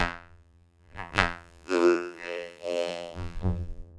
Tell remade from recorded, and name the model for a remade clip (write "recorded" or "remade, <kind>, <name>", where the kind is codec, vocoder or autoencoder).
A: remade, vocoder, BigVGAN v2